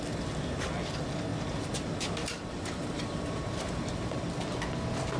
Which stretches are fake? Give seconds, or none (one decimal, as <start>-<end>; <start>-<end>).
1.3-4.4